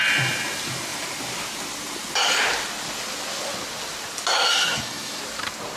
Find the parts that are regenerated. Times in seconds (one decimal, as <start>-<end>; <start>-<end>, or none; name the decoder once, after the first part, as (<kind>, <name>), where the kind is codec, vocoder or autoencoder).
4.5-5.2 (autoencoder, DAC-VAE)